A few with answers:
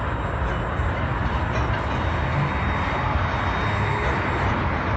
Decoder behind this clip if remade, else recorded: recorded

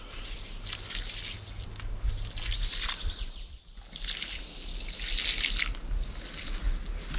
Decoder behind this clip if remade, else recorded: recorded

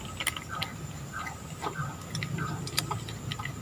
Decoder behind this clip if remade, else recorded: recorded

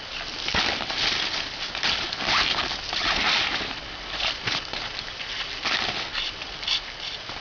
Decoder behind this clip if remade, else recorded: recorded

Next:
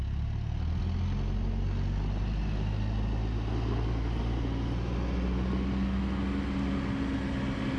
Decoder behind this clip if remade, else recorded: recorded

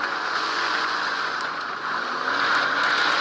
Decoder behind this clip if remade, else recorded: remade, vocoder, Vocos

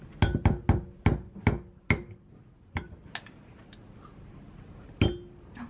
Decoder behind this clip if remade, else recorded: recorded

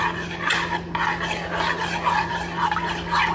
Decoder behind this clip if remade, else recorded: recorded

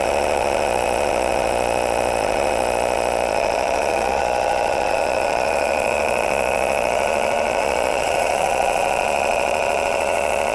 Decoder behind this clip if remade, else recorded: remade, vocoder, Vocos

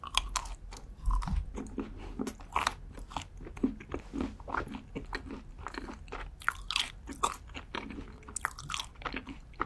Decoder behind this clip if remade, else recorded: recorded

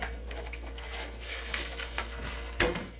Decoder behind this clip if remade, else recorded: remade, codec, SNAC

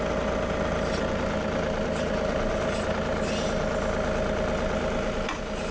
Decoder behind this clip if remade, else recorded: recorded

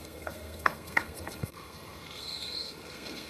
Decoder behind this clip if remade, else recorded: remade, codec, SNAC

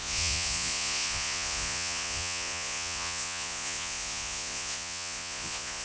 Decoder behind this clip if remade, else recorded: remade, vocoder, Vocos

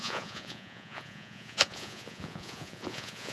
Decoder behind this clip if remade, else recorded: remade, vocoder, Vocos